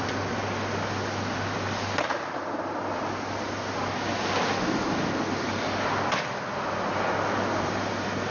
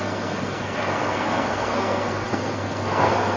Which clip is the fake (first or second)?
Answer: second